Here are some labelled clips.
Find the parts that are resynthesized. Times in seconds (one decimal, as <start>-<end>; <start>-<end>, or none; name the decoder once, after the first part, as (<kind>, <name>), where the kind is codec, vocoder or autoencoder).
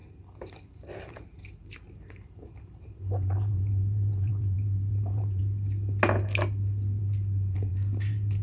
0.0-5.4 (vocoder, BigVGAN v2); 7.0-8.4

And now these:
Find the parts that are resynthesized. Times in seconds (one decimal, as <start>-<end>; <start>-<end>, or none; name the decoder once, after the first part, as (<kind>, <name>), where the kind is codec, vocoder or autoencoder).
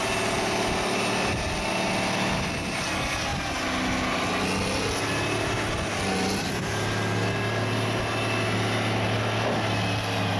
none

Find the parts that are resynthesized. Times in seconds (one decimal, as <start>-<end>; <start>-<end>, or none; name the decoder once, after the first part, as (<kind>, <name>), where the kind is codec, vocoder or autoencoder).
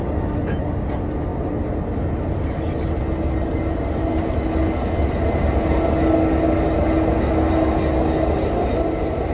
none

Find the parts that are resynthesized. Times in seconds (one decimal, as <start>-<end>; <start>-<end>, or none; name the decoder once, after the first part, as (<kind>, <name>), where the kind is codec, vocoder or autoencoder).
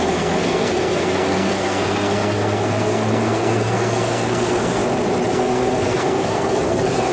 0.0-4.8 (codec, SNAC); 5.3-7.1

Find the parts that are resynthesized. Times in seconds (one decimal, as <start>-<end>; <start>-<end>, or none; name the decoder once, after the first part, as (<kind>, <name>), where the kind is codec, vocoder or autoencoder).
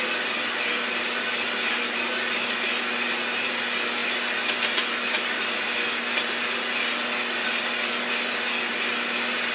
none